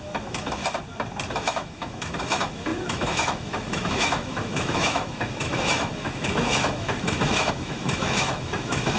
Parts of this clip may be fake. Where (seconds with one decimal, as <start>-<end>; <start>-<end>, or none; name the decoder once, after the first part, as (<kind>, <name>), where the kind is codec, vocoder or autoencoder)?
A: 0.0-0.6 (autoencoder, DAC-VAE); 1.3-9.0